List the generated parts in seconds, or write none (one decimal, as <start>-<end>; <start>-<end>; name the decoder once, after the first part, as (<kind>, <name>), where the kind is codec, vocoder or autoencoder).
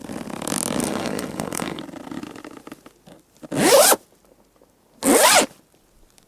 0.8-1.8 (codec, SNAC)